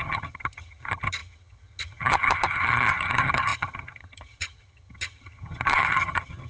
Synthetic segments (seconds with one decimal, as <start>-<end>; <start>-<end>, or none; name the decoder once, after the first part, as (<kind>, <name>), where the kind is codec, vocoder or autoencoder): 0.0-6.5 (vocoder, HiFi-GAN)

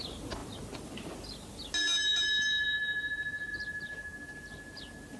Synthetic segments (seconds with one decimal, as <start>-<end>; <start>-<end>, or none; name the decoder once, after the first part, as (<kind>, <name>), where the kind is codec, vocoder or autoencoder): none